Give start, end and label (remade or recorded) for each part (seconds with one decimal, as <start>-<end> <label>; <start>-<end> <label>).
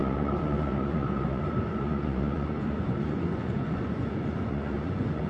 0.0-5.3 remade